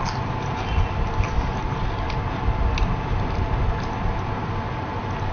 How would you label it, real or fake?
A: real